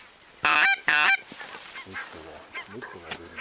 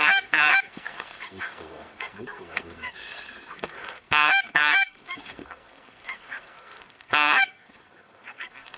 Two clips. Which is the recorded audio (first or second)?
first